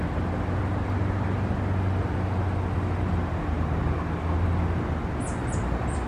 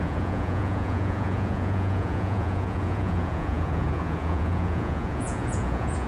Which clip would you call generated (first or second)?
second